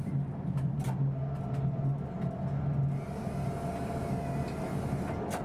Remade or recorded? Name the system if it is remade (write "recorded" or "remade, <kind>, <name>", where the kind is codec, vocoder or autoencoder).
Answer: recorded